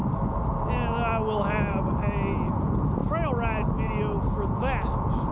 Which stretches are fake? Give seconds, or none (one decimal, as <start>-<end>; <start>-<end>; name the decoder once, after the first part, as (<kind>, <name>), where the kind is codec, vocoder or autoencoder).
none